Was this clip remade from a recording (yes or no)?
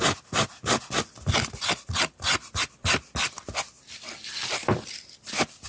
no